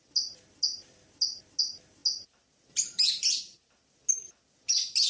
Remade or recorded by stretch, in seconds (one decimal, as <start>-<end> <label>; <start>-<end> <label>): 0.0-5.1 recorded